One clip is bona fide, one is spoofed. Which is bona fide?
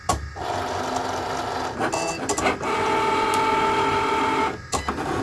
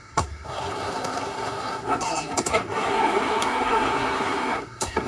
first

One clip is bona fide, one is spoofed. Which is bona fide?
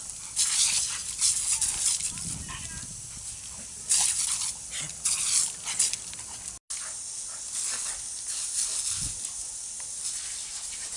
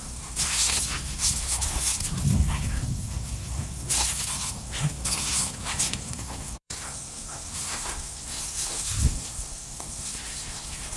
first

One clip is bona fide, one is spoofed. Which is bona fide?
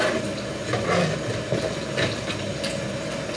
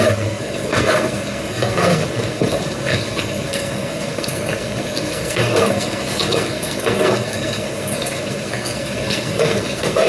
first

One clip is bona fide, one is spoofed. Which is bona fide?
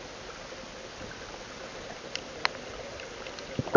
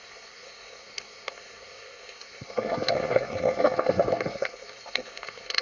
first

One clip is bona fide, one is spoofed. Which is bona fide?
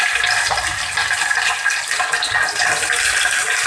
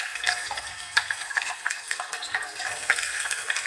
first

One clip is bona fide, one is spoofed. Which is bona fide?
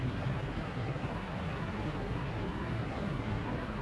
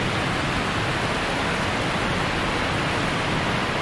second